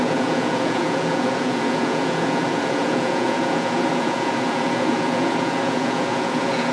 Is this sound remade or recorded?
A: remade